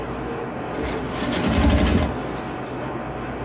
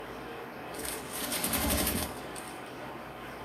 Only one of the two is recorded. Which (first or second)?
first